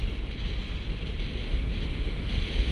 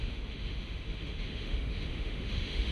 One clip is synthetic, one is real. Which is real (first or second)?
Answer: first